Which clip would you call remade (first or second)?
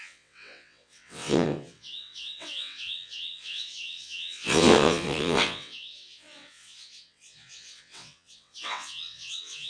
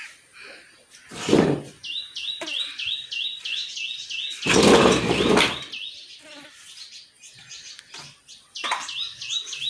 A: first